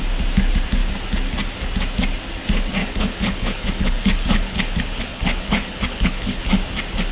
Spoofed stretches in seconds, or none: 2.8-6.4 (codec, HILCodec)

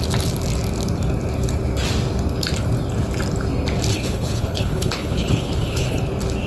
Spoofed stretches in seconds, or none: 3.9-6.0 (codec, HILCodec)

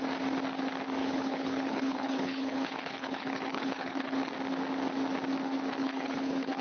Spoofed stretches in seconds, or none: 1.0-4.2 (codec, HILCodec); 5.8-6.6

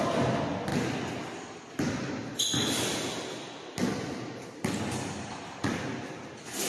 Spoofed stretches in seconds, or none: none

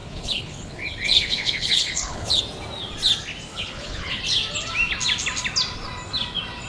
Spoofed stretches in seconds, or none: 0.0-2.4 (codec, HILCodec); 3.5-4.2

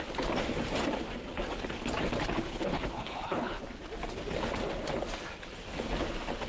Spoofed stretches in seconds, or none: 2.4-3.6 (codec, HILCodec)

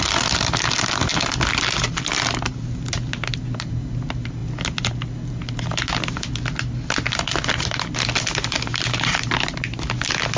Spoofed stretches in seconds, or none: none